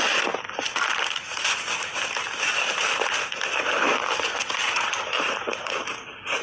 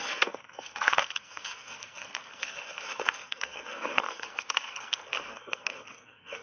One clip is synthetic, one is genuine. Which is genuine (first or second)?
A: first